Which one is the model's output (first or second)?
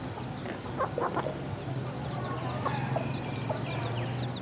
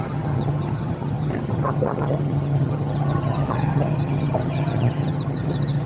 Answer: second